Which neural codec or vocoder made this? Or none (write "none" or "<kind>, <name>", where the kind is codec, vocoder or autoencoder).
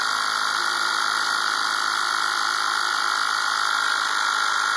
none